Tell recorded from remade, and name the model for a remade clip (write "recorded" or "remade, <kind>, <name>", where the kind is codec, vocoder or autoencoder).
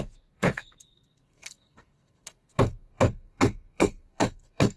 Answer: remade, codec, SNAC